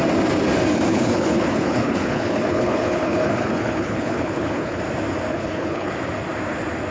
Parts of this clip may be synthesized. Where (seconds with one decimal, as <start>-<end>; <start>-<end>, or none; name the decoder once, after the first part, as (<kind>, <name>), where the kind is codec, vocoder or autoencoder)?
0.9-4.8 (codec, HILCodec); 5.3-5.9